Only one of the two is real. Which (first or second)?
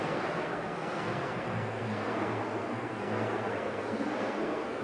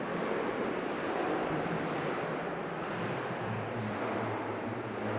second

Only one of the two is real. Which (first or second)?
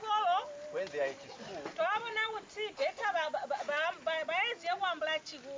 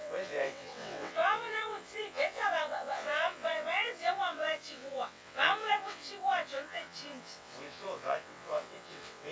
first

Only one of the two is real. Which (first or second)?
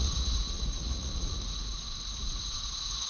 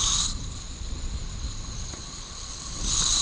second